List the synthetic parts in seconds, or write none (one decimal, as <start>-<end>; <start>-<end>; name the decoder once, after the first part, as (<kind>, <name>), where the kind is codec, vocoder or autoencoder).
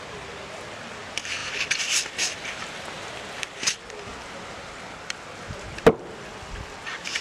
1.4-3.1 (vocoder, BigVGAN v2)